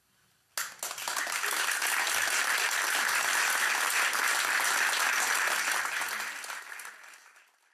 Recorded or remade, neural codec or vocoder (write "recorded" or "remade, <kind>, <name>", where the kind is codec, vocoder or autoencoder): recorded